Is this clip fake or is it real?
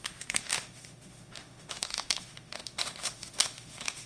fake